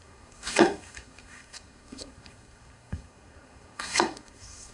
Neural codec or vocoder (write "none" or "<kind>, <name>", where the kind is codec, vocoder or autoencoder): codec, SNAC